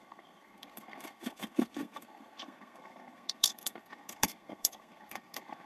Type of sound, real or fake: fake